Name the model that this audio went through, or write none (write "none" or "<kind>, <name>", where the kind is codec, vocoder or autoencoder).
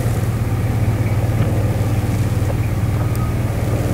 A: none